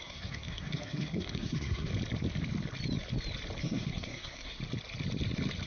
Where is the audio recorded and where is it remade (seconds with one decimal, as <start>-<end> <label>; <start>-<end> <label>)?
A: 0.0-1.9 remade; 1.9-3.6 recorded; 3.6-4.6 remade; 4.6-5.7 recorded